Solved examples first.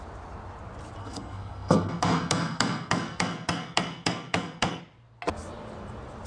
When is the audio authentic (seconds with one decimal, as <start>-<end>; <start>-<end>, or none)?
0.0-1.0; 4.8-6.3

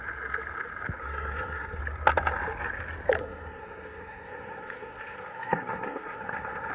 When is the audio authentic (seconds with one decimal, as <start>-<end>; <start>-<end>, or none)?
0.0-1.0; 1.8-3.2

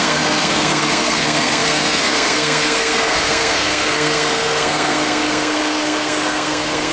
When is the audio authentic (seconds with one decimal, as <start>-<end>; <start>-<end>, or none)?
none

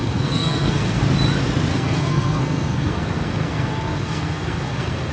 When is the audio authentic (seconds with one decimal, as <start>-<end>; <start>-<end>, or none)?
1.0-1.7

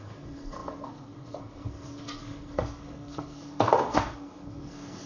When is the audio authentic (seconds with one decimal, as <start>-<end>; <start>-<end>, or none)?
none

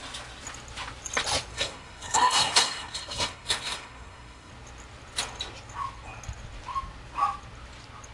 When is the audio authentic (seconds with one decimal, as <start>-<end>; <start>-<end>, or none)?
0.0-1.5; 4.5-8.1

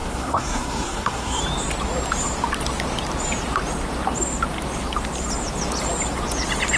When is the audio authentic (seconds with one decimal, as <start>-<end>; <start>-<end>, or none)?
1.4-6.8

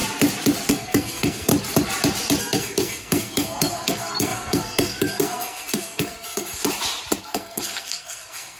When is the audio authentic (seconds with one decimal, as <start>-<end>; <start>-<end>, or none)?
0.0-0.7; 1.5-2.4; 6.6-7.2